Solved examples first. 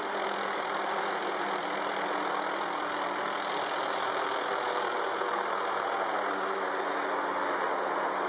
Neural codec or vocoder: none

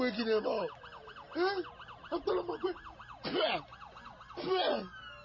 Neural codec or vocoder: none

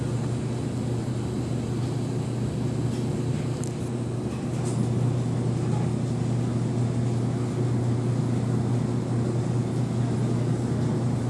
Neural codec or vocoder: none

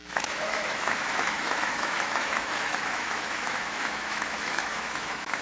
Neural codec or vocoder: autoencoder, DAC-VAE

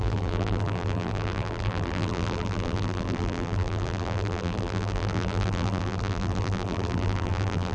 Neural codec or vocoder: vocoder, BigVGAN v2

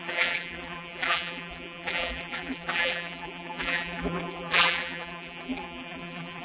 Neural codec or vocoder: vocoder, BigVGAN v2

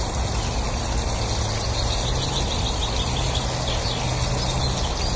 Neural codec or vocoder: none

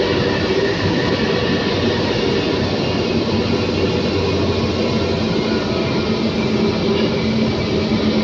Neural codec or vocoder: none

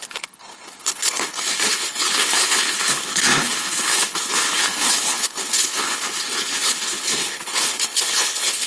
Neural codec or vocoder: codec, HILCodec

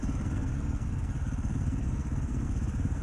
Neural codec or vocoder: codec, SNAC